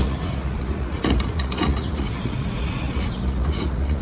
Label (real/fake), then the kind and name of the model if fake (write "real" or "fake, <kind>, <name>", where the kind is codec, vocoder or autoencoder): fake, vocoder, Vocos